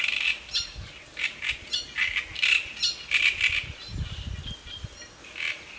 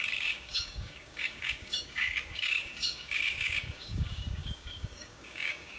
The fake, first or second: second